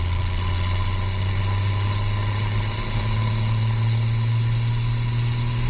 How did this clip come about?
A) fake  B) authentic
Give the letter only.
B